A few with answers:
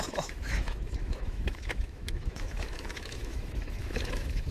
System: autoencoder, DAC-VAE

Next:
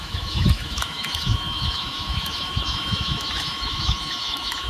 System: autoencoder, DAC-VAE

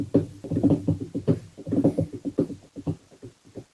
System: none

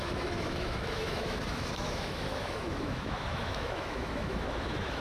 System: autoencoder, DAC-VAE